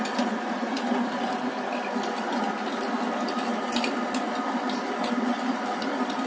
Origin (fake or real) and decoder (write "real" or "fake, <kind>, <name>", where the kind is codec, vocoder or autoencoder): real